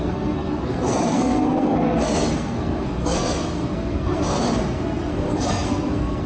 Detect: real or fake fake